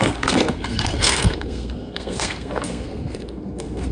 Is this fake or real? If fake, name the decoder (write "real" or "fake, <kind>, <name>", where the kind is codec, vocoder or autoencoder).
fake, codec, SNAC